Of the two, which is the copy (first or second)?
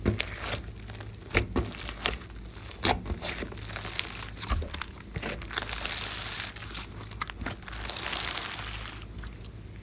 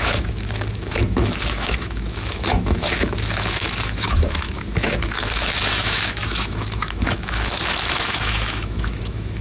second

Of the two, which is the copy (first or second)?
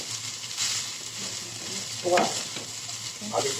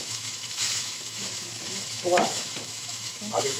second